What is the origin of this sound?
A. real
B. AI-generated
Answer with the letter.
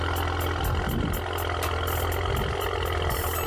A